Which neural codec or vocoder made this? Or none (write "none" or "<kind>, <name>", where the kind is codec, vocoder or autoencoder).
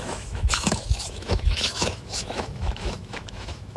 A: autoencoder, DAC-VAE